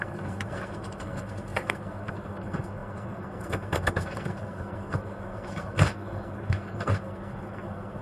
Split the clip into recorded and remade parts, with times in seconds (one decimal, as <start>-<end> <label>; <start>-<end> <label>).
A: 0.0-8.0 remade